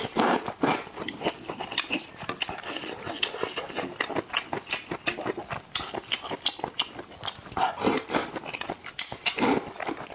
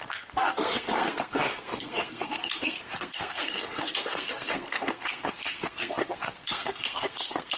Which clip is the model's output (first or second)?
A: second